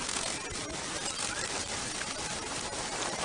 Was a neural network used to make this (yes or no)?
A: no